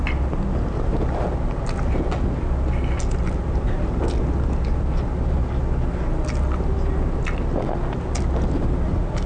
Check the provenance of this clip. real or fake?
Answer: real